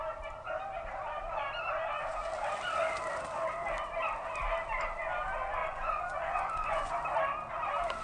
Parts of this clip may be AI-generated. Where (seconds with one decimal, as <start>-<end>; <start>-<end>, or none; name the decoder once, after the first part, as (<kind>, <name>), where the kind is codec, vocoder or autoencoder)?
5.6-6.9 (vocoder, Vocos)